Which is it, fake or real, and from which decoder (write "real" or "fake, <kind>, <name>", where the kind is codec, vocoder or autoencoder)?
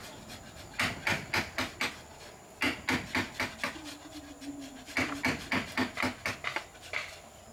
real